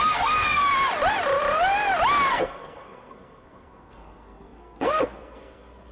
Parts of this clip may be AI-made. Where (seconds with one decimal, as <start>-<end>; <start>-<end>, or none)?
0.0-0.7; 2.3-5.9